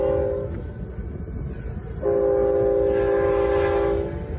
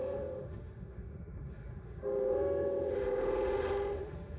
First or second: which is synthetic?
second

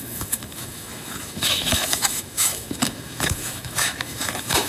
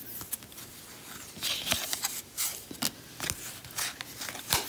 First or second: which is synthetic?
first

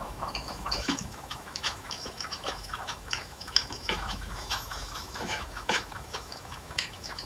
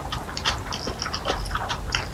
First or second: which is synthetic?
first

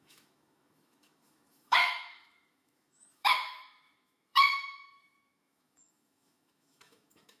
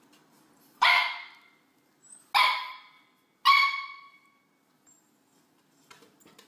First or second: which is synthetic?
first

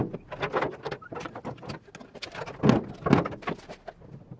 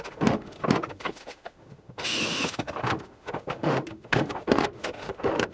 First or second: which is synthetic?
second